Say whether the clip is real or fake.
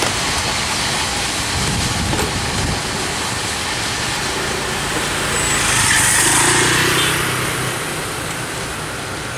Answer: real